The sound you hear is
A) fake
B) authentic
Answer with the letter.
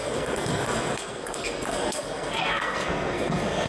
A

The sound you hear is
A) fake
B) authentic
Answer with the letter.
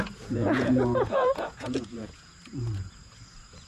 A